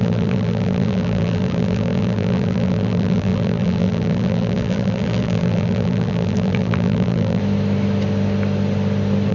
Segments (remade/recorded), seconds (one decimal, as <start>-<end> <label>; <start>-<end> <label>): 0.0-7.4 remade; 7.4-9.3 recorded